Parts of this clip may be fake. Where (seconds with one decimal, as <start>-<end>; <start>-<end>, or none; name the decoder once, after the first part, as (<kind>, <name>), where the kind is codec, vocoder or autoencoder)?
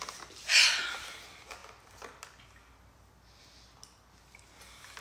none